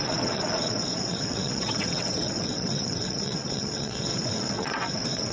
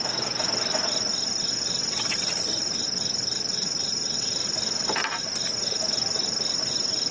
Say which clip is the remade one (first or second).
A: first